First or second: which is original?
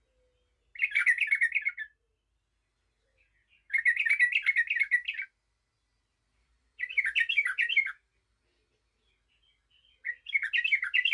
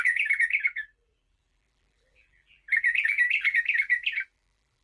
first